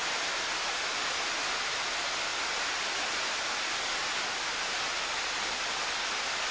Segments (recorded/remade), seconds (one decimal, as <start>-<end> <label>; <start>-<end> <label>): 0.0-6.5 recorded